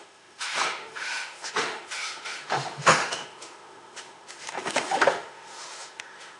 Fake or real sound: fake